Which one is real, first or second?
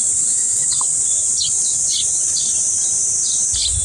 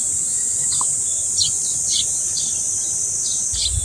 second